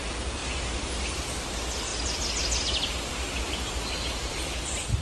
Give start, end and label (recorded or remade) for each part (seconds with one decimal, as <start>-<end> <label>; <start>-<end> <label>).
0.0-5.0 recorded

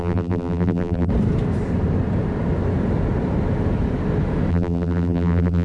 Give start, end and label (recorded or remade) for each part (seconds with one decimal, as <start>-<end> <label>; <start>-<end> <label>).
0.0-1.1 remade; 1.1-4.5 recorded; 4.5-5.6 remade

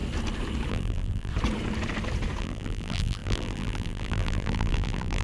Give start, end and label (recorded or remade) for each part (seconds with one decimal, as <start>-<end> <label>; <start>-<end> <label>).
0.0-0.7 recorded; 0.7-1.3 remade; 1.3-2.4 recorded; 2.4-5.2 remade

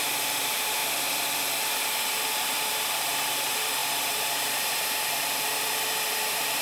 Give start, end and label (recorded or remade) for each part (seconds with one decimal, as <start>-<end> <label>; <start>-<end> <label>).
0.0-0.8 remade; 0.8-1.6 recorded; 1.6-6.6 remade

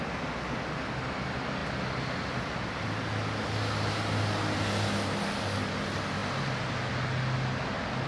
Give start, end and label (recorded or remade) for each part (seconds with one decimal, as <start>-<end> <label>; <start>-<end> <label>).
0.0-8.1 recorded

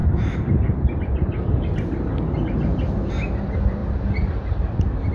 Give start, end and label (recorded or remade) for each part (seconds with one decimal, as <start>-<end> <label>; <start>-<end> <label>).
0.0-3.1 remade; 3.1-3.8 recorded; 3.8-5.1 remade

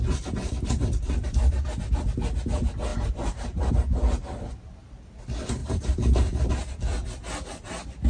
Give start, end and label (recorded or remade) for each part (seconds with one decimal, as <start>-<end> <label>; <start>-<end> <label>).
0.0-2.9 recorded; 2.9-3.7 remade; 3.7-5.6 recorded; 5.6-6.5 remade; 6.5-8.1 recorded

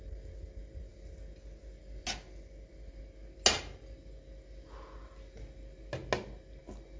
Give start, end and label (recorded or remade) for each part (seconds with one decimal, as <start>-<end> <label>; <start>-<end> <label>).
0.0-7.0 recorded